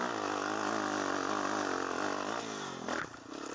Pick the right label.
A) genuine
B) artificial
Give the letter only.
A